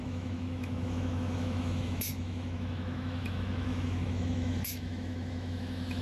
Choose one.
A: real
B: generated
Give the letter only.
B